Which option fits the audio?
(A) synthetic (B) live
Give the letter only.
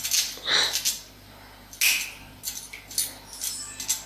B